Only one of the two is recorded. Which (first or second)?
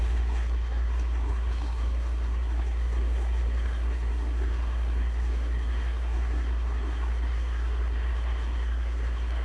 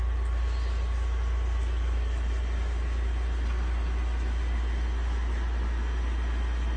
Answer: second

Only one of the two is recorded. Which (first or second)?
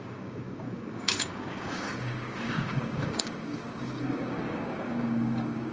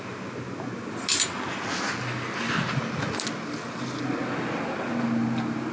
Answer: second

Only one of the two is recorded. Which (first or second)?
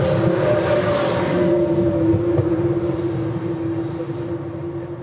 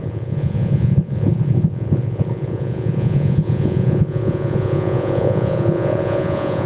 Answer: first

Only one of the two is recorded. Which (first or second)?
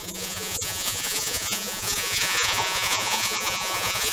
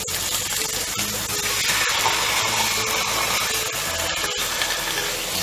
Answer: second